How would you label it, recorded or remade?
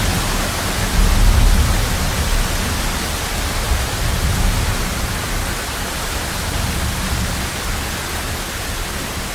recorded